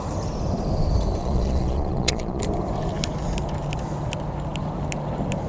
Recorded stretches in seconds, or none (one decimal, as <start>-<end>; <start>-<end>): 0.0-1.2; 2.4-5.5